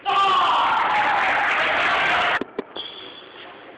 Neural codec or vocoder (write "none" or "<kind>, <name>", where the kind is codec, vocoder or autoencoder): none